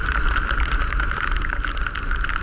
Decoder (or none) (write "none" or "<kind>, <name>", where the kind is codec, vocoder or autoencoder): none